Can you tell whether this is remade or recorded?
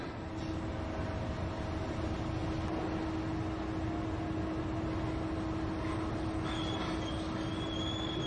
recorded